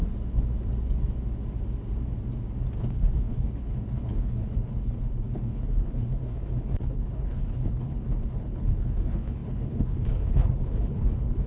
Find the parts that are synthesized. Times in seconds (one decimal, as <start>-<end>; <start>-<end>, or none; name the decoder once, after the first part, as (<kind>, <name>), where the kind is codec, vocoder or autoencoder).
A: 2.8-11.5 (codec, HILCodec)

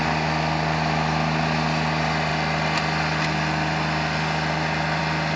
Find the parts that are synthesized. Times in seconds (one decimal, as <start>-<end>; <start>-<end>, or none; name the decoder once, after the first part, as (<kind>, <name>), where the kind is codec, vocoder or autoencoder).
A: none

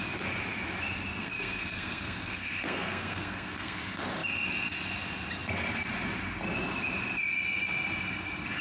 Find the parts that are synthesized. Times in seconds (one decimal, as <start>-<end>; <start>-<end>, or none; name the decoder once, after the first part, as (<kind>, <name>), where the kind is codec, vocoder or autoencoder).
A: 1.1-3.8 (codec, SNAC)

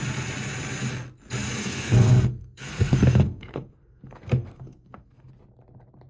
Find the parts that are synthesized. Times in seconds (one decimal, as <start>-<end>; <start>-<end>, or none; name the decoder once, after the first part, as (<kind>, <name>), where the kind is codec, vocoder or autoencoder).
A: 1.6-5.3 (codec, SNAC)

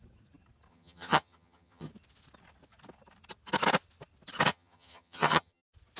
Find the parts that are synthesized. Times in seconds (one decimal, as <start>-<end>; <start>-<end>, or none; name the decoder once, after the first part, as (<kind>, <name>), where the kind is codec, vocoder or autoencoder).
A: 0.7-1.9 (vocoder, HiFi-GAN); 4.5-5.6

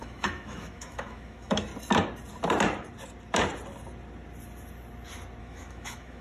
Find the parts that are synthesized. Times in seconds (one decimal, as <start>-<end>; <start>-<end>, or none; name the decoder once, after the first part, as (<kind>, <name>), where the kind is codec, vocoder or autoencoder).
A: 0.0-1.7 (autoencoder, DAC-VAE); 5.4-6.2

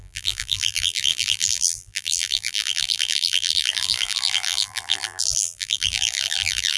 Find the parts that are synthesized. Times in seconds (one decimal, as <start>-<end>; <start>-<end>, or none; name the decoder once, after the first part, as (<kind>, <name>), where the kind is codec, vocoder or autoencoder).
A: 0.0-6.8 (vocoder, BigVGAN v2)

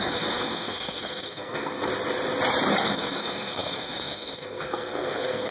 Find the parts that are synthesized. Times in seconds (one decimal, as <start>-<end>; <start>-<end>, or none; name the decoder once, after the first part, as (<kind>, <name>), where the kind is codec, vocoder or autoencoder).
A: 0.0-1.9 (codec, SNAC); 2.8-5.5